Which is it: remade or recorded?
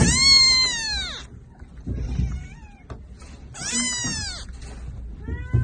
recorded